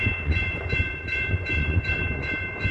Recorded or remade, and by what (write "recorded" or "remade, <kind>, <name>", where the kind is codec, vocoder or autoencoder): remade, vocoder, Vocos